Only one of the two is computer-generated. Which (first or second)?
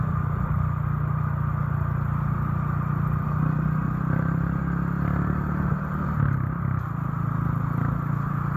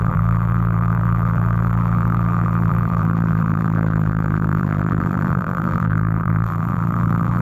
second